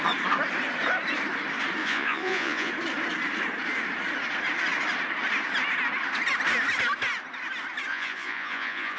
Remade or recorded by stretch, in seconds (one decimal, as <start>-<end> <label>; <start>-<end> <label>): 0.0-1.8 recorded; 1.8-2.7 remade; 2.7-7.9 recorded; 7.9-9.0 remade